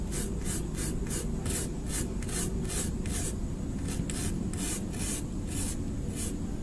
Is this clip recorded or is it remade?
recorded